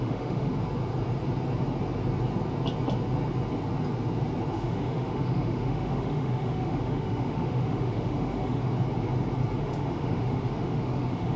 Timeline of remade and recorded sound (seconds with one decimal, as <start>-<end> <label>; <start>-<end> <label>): 0.0-0.5 remade; 0.5-4.5 recorded; 4.5-8.6 remade; 8.6-9.6 recorded; 9.6-11.4 remade